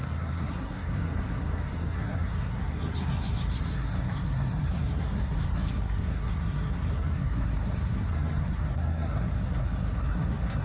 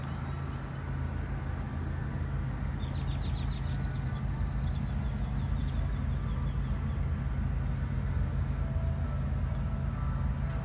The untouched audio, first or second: second